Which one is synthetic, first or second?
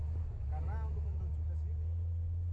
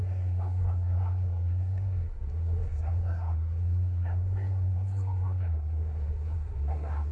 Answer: second